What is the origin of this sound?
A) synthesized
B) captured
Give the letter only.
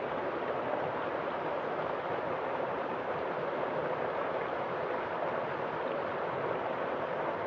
B